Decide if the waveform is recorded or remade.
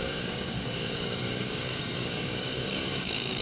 remade